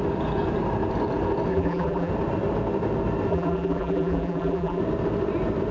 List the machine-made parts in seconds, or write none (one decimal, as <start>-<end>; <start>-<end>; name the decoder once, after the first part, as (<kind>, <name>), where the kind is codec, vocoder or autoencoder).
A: 1.5-2.1 (vocoder, BigVGAN v2); 3.3-4.8